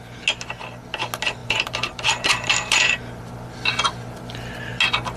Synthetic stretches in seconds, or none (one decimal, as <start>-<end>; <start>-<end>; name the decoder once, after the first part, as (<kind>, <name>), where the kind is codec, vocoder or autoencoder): 1.4-3.3 (vocoder, BigVGAN v2)